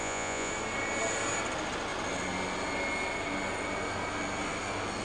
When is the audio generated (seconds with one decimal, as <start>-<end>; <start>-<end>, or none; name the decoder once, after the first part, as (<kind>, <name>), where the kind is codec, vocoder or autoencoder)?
0.0-0.5 (vocoder, Vocos)